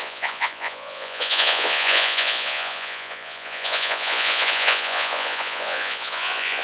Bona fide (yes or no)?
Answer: no